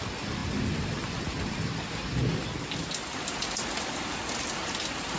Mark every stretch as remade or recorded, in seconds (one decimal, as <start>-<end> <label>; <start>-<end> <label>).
0.0-5.2 recorded